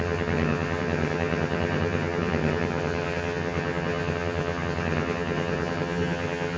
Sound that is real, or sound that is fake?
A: fake